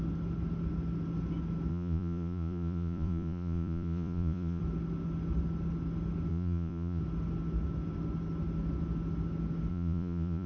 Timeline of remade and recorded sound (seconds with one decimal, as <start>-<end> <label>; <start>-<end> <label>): 0.0-1.7 recorded; 1.7-4.6 remade; 4.6-6.3 recorded; 6.3-7.0 remade; 7.0-9.7 recorded; 9.7-10.5 remade